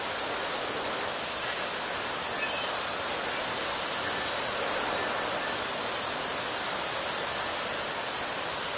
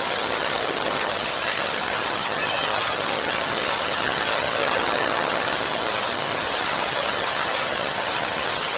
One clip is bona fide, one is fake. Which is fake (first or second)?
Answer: second